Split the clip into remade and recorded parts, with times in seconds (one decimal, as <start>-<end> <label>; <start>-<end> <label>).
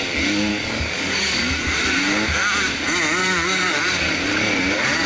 0.0-0.5 recorded; 0.5-1.6 remade; 1.6-3.2 recorded; 3.2-3.8 remade; 3.8-5.1 recorded